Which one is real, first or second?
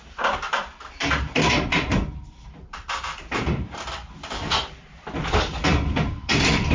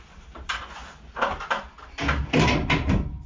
second